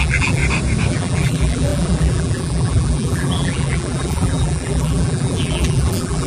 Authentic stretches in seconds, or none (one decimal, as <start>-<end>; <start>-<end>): 0.4-0.9